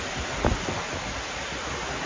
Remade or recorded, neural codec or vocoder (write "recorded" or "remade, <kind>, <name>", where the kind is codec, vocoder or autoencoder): recorded